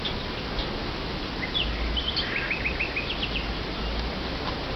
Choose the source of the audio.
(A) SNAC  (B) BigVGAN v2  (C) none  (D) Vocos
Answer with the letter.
C